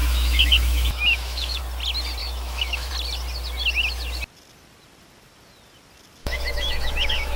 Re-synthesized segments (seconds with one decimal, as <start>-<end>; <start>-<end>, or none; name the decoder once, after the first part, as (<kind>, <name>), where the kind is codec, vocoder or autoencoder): 0.0-1.6 (autoencoder, DAC-VAE); 2.2-2.9; 6.2-7.4

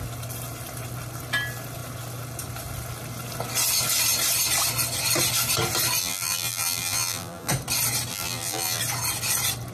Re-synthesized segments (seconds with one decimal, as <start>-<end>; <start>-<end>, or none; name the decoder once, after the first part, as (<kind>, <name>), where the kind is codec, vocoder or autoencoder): 6.0-7.5 (vocoder, BigVGAN v2); 8.1-8.8

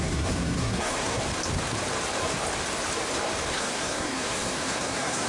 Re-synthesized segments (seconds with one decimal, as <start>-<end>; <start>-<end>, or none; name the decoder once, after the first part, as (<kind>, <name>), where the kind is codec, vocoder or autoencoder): 0.0-1.2 (codec, SNAC); 3.5-5.3

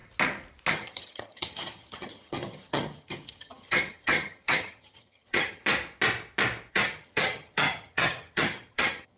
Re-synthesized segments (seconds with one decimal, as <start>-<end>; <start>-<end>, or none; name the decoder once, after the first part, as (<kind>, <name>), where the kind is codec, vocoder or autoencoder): 0.7-5.6 (vocoder, HiFi-GAN); 6.7-9.2

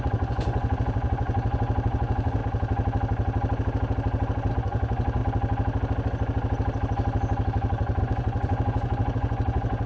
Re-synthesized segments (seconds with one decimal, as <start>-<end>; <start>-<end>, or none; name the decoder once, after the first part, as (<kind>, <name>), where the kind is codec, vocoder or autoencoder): 0.0-2.4 (vocoder, Vocos); 4.5-5.2; 8.0-9.9

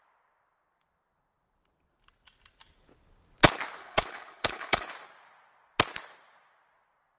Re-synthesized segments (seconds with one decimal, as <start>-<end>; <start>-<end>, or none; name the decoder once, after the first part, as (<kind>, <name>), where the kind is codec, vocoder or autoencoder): 3.8-4.9 (codec, HILCodec)

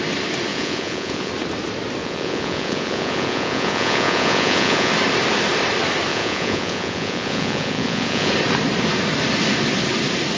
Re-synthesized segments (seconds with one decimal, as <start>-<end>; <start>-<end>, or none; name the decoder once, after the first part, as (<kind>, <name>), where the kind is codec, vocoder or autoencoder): 0.5-1.3 (vocoder, Vocos); 2.0-4.9; 6.1-8.3

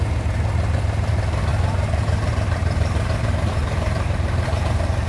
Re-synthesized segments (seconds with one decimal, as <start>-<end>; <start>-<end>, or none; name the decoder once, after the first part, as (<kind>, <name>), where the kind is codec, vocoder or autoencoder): 1.5-4.6 (vocoder, BigVGAN v2)